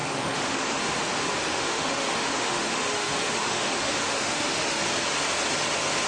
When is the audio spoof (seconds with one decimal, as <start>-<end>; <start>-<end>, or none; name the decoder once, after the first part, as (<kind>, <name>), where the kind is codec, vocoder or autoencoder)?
0.0-0.8 (autoencoder, DAC-VAE); 1.5-4.8